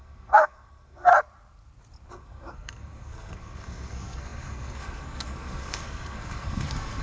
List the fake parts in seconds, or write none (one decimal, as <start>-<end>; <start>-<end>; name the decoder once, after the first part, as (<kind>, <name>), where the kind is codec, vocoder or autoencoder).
0.0-1.1 (codec, SNAC); 2.1-7.0